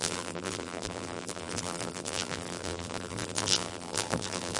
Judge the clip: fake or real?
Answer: fake